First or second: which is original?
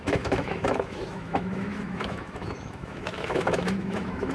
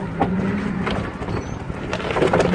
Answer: second